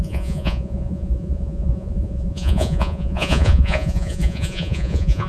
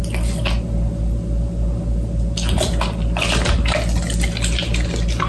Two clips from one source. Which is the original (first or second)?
second